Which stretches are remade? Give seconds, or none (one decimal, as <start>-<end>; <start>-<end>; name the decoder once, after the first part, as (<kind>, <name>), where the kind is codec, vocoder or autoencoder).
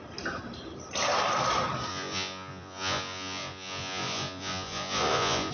1.9-5.5 (vocoder, Vocos)